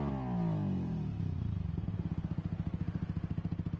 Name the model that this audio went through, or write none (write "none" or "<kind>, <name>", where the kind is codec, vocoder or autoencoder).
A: none